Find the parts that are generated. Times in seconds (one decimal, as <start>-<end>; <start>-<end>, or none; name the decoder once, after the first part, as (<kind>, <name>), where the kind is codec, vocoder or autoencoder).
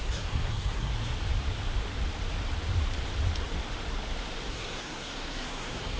0.0-0.9 (codec, SNAC); 4.5-6.0